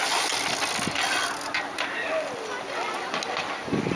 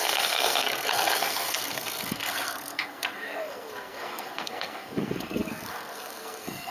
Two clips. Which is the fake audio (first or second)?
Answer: second